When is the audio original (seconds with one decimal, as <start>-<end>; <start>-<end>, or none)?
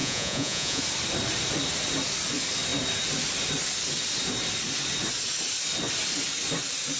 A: 0.8-7.0